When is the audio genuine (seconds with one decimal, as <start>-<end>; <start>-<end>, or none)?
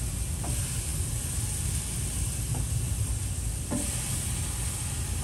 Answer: 0.0-5.2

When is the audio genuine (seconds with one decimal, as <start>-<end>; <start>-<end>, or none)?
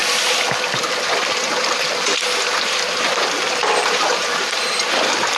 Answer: 0.0-3.1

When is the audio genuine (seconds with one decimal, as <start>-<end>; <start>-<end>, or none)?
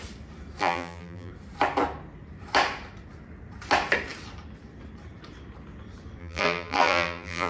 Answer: 0.0-0.6; 1.3-6.2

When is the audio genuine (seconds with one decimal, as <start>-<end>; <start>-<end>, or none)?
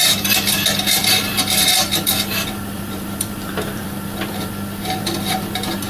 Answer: 0.0-1.0; 4.5-5.9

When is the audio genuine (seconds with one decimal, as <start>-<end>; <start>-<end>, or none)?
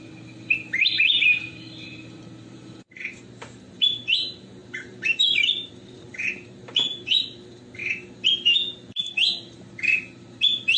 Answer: none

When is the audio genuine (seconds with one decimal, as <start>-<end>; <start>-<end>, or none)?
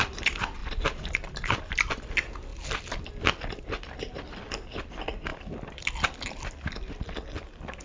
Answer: 0.0-0.6; 1.9-2.5; 3.1-5.3; 5.9-7.8